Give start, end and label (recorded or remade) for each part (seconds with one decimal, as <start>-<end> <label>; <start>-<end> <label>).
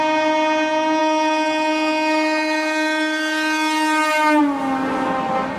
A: 0.0-1.0 recorded; 1.0-4.4 remade; 4.4-5.6 recorded